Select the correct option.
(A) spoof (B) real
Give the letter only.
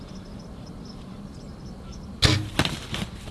B